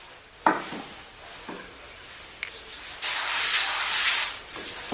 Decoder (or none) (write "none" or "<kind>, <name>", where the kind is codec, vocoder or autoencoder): none